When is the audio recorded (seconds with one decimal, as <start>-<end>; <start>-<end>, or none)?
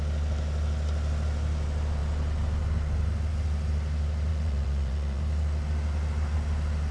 0.0-4.3; 5.2-6.9